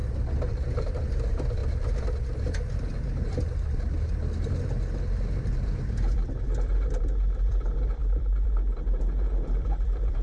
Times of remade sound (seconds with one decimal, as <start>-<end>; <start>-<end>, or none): 0.5-1.6; 5.9-10.2